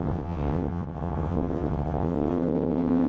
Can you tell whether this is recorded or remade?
remade